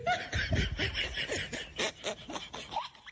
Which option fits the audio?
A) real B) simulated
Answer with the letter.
A